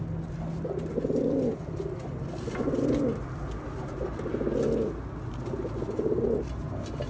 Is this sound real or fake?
real